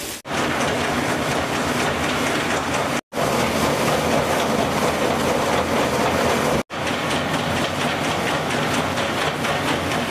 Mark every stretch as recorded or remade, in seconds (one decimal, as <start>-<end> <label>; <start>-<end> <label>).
0.0-10.1 recorded